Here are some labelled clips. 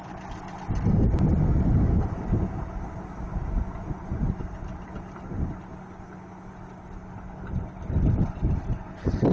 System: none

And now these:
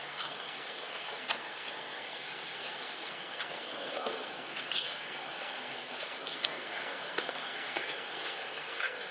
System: codec, SNAC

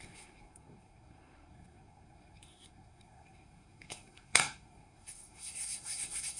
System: codec, SNAC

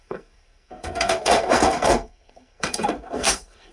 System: codec, SNAC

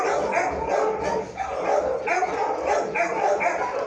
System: none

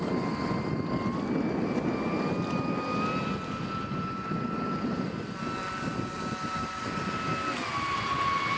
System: none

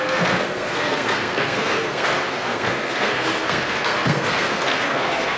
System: codec, SNAC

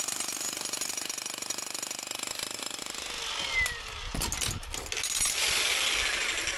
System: none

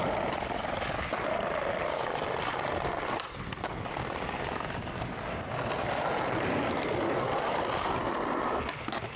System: none